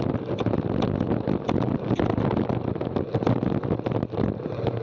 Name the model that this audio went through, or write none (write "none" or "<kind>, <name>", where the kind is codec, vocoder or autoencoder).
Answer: none